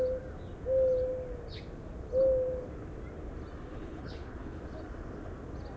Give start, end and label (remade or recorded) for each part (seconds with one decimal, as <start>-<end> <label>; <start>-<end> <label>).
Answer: 0.0-3.7 recorded; 3.7-4.6 remade; 4.6-5.8 recorded